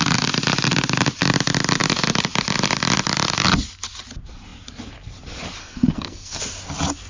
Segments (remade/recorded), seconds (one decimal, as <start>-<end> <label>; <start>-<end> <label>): 0.0-5.6 recorded; 5.6-6.4 remade; 6.4-7.1 recorded